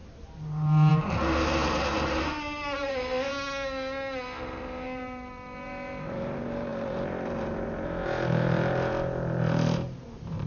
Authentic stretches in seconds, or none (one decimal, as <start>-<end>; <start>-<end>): 3.3-4.6